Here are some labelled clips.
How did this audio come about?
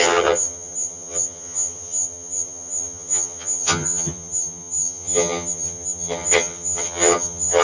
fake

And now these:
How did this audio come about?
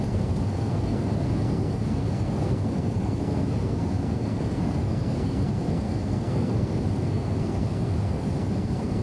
fake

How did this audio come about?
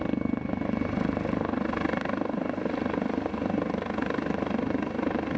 real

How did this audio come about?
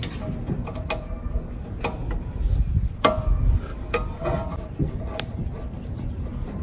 real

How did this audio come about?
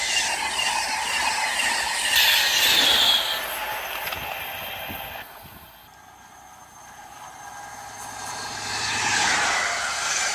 real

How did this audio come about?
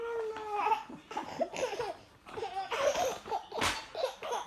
real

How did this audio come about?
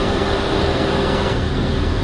fake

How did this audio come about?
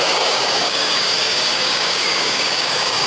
fake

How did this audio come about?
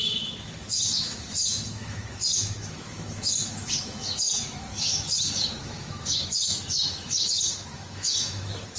fake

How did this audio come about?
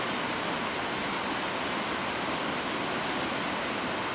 real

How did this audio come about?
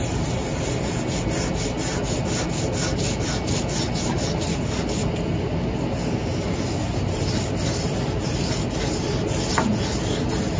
real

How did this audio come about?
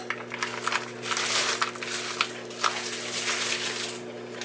real